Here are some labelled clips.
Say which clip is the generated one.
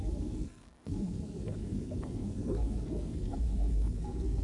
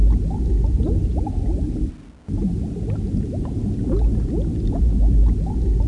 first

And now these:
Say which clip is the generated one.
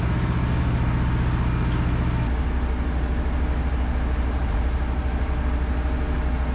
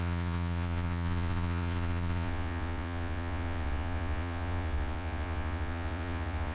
second